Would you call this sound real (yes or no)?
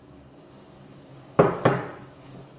no